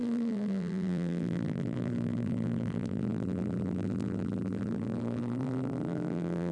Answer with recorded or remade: remade